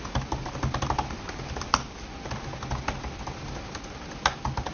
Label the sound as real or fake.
real